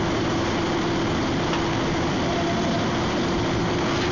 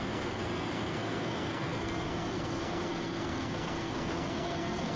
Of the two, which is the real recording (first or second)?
first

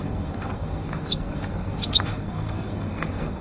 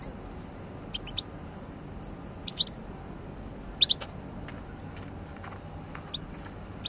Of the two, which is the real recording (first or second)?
second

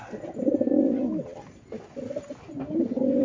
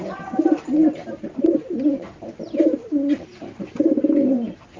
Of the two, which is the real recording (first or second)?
first